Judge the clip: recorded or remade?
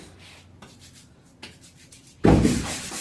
remade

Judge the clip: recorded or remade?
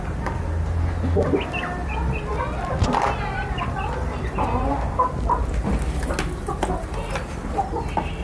recorded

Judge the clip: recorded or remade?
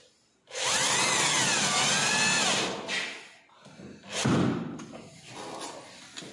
recorded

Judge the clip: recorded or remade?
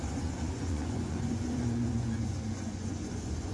remade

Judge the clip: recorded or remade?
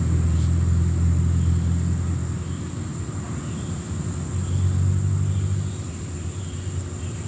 recorded